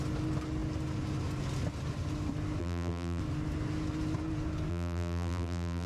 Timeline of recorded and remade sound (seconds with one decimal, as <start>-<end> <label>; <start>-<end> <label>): 0.0-2.6 recorded; 2.6-3.2 remade; 3.2-4.7 recorded; 4.7-5.9 remade